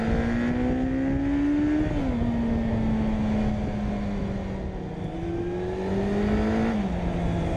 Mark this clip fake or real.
real